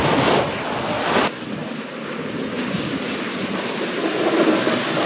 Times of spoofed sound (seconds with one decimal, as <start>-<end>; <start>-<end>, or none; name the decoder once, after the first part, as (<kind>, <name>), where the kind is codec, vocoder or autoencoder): none

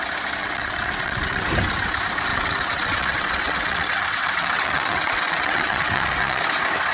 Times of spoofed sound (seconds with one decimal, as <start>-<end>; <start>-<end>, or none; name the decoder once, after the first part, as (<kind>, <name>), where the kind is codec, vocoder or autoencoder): 0.4-1.5 (vocoder, WaveNeXt); 2.3-6.4

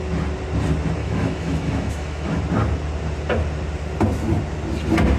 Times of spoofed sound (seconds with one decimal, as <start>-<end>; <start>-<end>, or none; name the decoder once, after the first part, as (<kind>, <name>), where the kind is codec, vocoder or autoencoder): 1.0-2.4 (autoencoder, DAC-VAE)

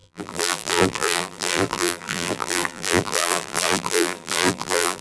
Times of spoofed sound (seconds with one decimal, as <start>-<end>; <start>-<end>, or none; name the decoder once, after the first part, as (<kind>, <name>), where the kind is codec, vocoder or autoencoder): 0.0-5.0 (vocoder, BigVGAN v2)

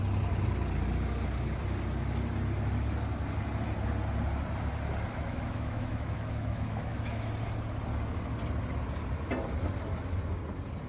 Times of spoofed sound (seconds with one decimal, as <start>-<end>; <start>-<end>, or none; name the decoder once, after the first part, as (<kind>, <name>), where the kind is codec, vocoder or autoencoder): 5.1-7.3 (autoencoder, DAC-VAE)

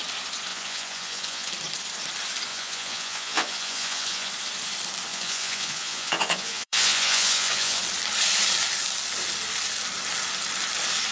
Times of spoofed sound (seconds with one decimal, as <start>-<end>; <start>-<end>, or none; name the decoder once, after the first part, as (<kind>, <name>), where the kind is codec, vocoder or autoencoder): 0.5-1.5 (vocoder, Vocos); 2.5-4.3; 5.1-7.8

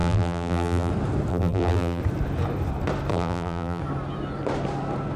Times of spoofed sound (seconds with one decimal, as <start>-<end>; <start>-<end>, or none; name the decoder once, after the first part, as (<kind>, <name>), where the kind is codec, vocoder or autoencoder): 0.0-0.9 (vocoder, BigVGAN v2); 1.3-2.0; 3.1-3.8

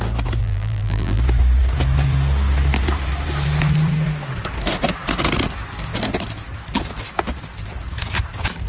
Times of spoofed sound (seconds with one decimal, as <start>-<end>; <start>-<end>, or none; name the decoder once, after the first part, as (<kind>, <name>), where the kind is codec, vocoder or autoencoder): 0.4-1.2 (vocoder, BigVGAN v2)